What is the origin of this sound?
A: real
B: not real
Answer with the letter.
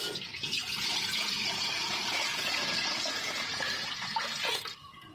B